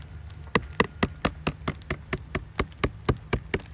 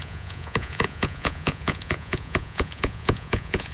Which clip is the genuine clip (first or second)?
first